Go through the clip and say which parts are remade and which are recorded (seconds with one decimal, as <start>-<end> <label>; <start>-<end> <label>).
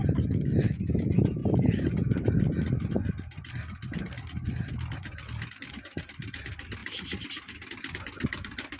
0.0-1.4 recorded; 1.4-5.5 remade; 5.5-8.8 recorded